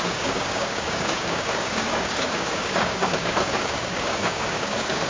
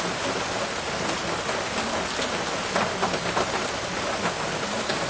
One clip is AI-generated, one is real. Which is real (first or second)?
second